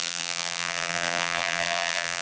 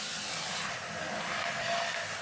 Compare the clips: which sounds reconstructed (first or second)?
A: first